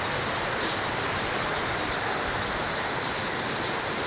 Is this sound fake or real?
real